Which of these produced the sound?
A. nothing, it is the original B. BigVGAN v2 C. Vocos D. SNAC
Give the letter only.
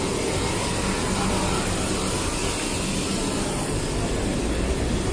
A